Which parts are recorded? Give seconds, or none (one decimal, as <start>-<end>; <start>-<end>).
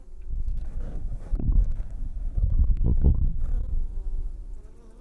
0.0-0.5; 3.5-5.0